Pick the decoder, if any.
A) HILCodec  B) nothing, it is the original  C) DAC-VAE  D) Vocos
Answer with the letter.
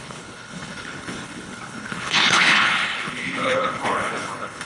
A